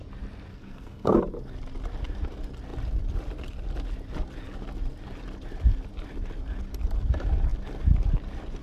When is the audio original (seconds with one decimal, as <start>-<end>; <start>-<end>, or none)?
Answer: 0.0-0.5; 1.2-8.6